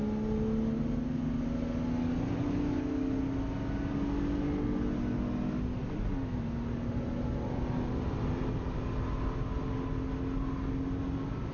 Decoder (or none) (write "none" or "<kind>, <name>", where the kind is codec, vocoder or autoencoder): none